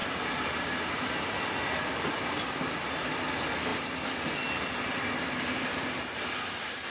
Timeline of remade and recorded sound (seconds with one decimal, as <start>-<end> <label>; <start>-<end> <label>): 0.0-6.9 recorded